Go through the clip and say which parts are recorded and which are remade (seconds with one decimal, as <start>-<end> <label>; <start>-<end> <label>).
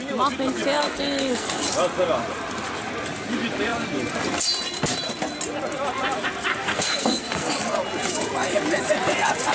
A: 0.0-0.8 recorded; 0.8-1.6 remade; 1.6-6.5 recorded; 6.5-7.6 remade; 7.6-9.5 recorded